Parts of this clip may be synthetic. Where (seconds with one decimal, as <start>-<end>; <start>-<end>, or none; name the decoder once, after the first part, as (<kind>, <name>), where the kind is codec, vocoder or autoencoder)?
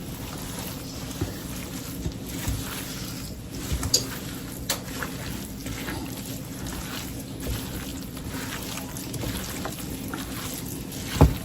none